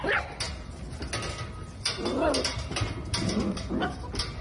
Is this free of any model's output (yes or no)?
yes